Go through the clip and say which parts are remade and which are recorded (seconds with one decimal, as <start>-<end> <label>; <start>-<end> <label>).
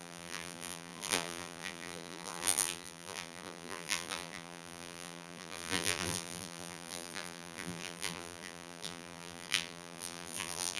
0.0-10.8 remade